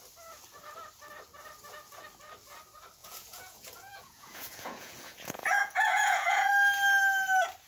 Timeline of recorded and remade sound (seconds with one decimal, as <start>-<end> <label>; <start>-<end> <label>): 0.0-3.0 recorded; 3.0-6.5 remade; 6.5-7.7 recorded